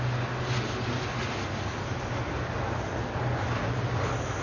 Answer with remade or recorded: recorded